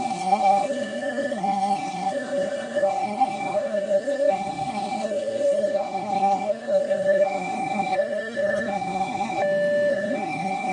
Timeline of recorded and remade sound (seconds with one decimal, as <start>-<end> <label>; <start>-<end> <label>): 0.0-9.4 remade; 9.4-9.9 recorded; 9.9-10.7 remade